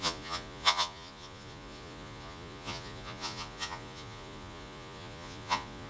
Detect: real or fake fake